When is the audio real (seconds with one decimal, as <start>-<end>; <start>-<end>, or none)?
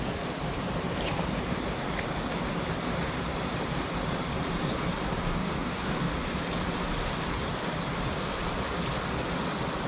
0.0-5.3; 6.1-9.9